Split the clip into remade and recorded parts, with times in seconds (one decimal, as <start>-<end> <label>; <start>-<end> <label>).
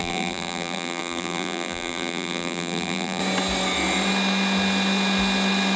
0.0-3.2 remade; 3.2-5.8 recorded